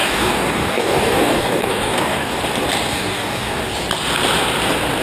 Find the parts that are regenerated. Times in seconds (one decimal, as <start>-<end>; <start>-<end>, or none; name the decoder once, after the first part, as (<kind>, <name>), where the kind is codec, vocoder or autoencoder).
0.0-2.4 (codec, DAC); 2.9-3.6